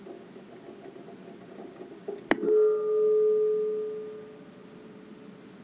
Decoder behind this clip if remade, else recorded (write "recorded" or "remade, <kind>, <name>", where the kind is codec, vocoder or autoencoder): recorded